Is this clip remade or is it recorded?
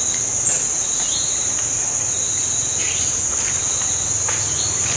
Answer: recorded